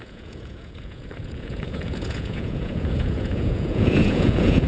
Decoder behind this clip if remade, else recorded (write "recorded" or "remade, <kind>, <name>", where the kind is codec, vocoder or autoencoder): remade, vocoder, Vocos